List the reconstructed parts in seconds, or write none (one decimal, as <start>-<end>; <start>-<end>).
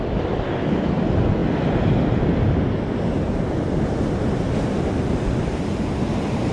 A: none